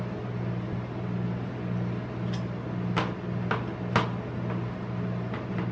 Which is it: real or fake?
real